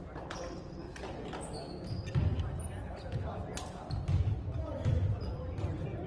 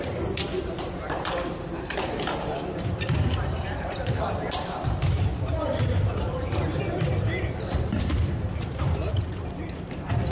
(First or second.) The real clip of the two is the first